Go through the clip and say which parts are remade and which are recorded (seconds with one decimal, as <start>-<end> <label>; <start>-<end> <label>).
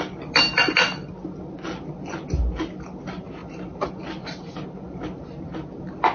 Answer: 0.0-3.4 recorded; 3.4-4.0 remade; 4.0-6.1 recorded